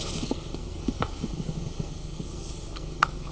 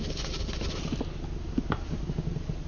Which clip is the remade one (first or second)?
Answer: first